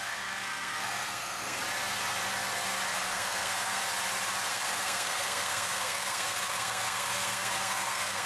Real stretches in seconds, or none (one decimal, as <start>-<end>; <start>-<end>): 1.6-3.0; 3.8-4.5